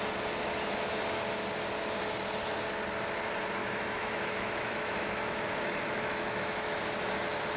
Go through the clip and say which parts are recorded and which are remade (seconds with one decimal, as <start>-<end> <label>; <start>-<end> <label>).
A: 0.0-3.6 recorded; 3.6-6.8 remade; 6.8-7.6 recorded